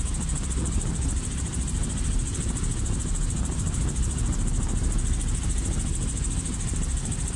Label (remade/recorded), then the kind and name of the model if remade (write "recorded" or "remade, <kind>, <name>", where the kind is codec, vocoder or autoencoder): recorded